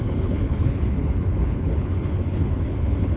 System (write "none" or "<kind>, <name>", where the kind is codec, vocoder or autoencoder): codec, HILCodec